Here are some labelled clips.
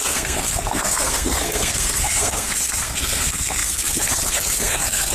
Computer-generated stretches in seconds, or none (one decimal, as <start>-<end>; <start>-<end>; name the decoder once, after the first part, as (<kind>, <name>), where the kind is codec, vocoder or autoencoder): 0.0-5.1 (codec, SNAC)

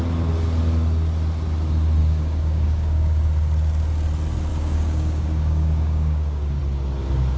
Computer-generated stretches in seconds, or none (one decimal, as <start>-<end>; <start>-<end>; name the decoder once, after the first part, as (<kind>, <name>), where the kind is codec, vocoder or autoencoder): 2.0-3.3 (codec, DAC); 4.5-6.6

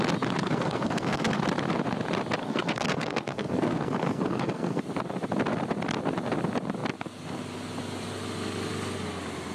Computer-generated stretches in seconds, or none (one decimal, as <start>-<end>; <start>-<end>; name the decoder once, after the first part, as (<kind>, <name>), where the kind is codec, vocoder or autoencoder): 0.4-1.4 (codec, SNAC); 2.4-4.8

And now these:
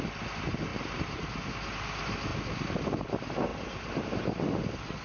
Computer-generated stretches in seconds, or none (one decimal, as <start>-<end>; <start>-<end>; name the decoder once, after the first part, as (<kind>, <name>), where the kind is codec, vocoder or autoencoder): 0.7-1.4 (vocoder, BigVGAN v2)